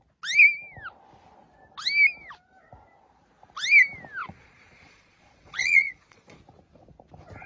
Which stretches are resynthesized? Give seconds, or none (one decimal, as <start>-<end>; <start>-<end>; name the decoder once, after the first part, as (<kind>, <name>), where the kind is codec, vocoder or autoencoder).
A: 4.2-6.4 (vocoder, Vocos)